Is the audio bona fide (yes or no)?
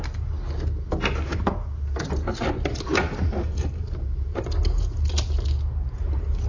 yes